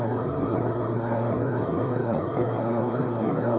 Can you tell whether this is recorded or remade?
remade